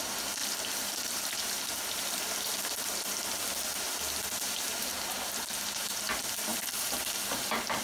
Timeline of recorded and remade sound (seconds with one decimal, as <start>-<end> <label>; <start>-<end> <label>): 0.0-7.8 recorded